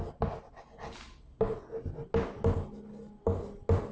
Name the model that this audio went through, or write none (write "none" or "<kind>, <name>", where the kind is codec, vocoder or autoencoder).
none